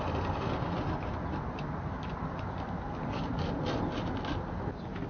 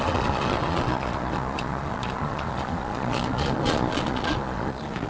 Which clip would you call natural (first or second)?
first